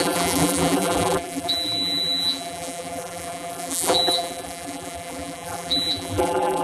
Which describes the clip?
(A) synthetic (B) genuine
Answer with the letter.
A